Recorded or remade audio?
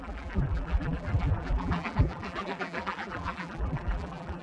remade